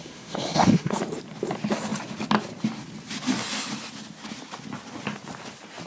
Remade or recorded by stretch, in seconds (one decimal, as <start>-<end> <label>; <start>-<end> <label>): 0.0-1.0 remade; 1.0-5.9 recorded